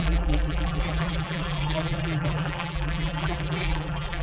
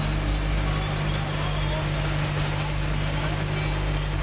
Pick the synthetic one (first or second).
first